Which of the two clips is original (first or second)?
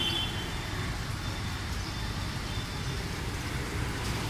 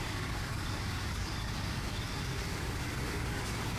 first